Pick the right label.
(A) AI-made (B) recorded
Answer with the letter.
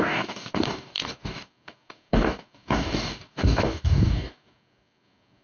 A